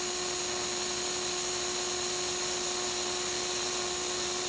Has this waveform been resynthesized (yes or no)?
no